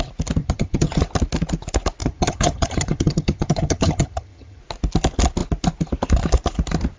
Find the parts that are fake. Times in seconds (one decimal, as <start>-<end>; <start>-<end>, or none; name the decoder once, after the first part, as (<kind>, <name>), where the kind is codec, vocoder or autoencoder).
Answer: 0.4-1.0 (vocoder, HiFi-GAN); 2.0-4.6